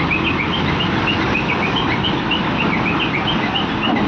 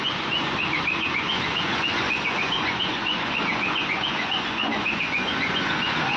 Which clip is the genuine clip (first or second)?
first